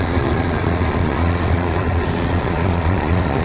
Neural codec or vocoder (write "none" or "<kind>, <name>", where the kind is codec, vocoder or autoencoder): vocoder, Vocos